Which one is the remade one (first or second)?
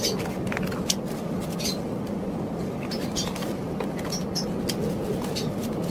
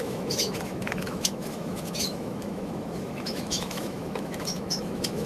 second